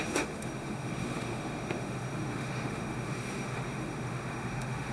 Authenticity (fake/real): fake